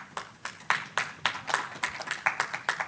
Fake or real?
real